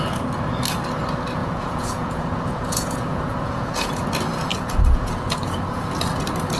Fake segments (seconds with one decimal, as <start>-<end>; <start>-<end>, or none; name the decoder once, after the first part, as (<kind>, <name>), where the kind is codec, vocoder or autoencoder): 1.4-3.9 (vocoder, Vocos); 4.5-5.9

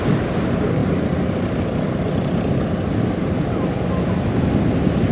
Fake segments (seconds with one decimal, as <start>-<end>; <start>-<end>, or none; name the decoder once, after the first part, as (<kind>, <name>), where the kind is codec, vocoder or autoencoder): none

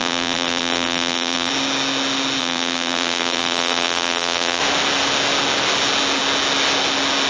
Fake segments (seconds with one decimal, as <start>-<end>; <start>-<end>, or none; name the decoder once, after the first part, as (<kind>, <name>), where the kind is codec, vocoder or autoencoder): 0.0-1.5 (vocoder, BigVGAN v2); 2.4-4.6